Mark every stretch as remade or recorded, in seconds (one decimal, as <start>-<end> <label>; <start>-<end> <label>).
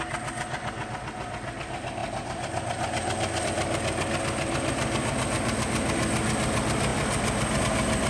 0.0-8.1 recorded